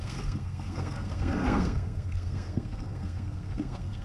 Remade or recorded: remade